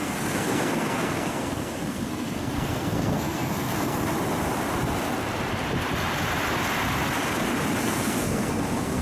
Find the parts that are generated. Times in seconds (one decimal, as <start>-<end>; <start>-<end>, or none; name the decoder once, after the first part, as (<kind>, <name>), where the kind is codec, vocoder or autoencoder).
0.0-4.1 (codec, SNAC); 7.8-9.0